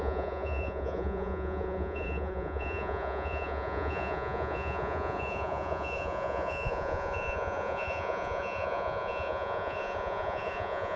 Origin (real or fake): fake